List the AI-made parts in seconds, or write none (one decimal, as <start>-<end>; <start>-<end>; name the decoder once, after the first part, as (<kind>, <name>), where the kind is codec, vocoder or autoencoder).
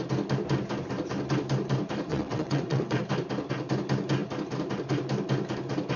2.1-3.0 (vocoder, WaveNeXt)